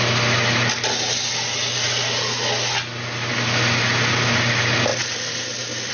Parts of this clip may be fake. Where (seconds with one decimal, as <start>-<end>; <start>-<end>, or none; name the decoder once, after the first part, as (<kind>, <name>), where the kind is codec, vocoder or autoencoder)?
none